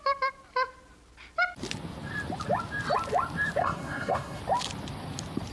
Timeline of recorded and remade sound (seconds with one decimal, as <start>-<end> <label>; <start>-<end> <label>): 0.0-3.6 recorded; 3.6-4.4 remade; 4.4-5.5 recorded